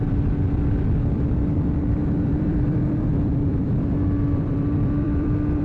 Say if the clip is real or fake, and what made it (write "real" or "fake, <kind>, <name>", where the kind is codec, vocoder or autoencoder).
fake, vocoder, BigVGAN v2